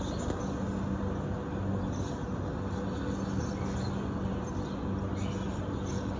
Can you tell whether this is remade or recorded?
recorded